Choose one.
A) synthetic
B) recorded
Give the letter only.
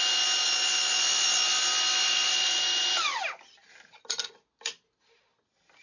B